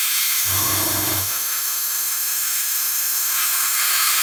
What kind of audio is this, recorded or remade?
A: remade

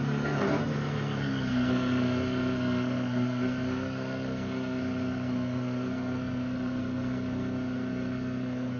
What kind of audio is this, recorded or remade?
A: remade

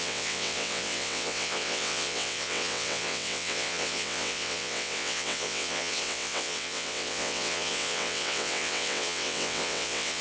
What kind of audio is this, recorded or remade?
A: remade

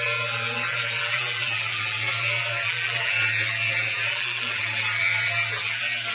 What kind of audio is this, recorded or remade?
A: remade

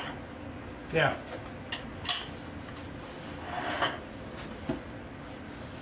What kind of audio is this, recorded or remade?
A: recorded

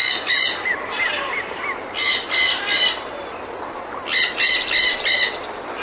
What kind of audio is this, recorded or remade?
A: recorded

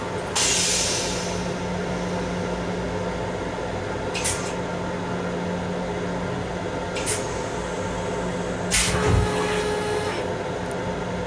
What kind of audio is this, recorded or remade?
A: recorded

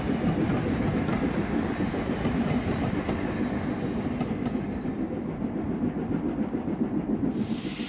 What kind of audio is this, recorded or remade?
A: recorded